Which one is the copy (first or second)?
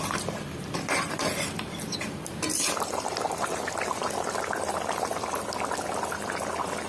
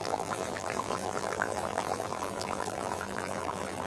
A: second